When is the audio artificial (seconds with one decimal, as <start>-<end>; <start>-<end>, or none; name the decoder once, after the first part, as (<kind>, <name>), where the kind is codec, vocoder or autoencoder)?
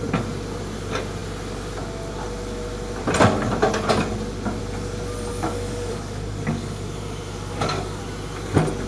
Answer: 5.3-8.0 (codec, DAC)